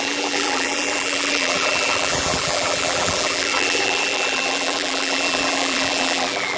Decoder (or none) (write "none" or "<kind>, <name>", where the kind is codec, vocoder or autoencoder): vocoder, BigVGAN v2